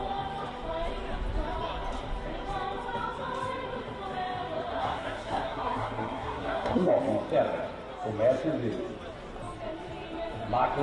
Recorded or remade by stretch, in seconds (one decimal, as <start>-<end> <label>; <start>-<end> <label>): 0.0-4.7 recorded; 4.7-6.9 remade; 6.9-10.8 recorded